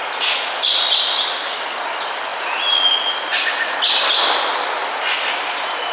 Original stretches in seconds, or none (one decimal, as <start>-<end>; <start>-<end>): 0.0-5.9